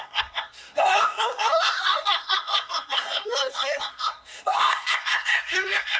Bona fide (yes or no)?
no